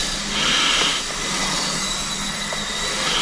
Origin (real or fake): real